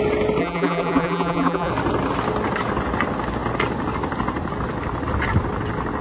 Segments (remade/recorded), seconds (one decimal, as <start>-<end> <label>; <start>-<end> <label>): 0.0-0.4 recorded; 0.4-1.7 remade; 1.7-6.0 recorded